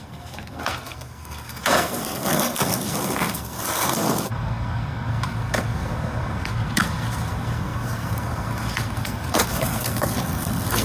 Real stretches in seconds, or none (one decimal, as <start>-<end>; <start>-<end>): none